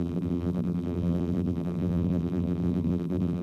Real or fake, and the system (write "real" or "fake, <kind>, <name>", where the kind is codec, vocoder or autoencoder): fake, vocoder, BigVGAN v2